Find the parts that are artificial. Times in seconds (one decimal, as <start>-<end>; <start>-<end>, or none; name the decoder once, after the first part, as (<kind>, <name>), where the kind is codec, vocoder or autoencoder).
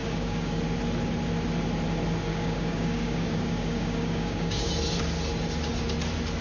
0.0-0.6 (codec, DAC); 2.3-4.7